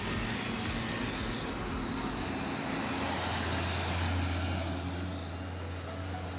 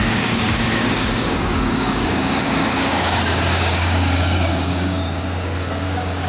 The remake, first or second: second